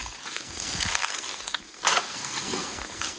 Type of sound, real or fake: fake